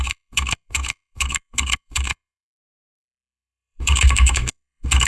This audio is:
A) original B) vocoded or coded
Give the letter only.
B